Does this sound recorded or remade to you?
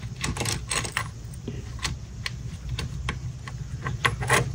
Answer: recorded